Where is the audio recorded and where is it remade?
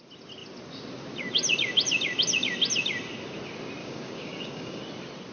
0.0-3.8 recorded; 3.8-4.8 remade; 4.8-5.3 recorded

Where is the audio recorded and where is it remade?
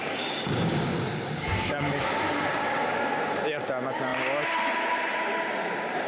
0.0-3.1 remade; 3.1-6.1 recorded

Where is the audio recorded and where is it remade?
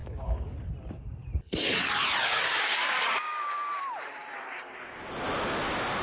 0.0-0.6 remade; 0.6-2.2 recorded; 2.2-3.8 remade; 3.8-6.0 recorded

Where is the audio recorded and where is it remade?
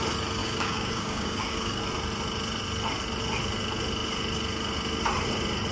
0.0-0.4 recorded; 0.4-1.8 remade; 1.8-5.7 recorded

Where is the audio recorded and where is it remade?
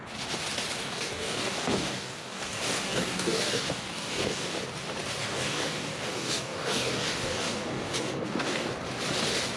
0.0-0.8 recorded; 0.8-4.6 remade; 4.6-5.2 recorded; 5.2-8.7 remade; 8.7-9.6 recorded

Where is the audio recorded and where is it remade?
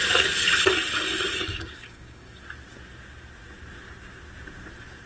0.0-1.5 recorded; 1.5-2.4 remade; 2.4-5.1 recorded